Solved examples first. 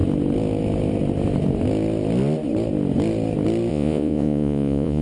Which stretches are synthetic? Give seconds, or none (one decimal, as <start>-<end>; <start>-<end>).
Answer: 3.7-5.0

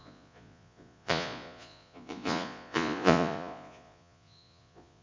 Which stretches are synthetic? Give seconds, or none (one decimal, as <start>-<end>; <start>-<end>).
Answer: 0.0-5.0

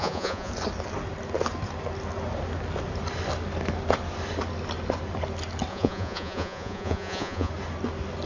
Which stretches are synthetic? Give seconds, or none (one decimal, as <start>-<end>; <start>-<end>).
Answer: 0.0-0.5; 5.7-7.5